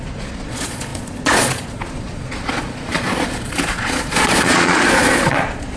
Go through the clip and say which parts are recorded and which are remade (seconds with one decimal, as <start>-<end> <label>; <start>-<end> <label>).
0.0-5.8 remade